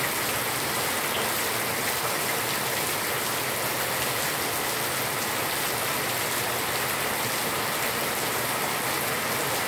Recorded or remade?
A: recorded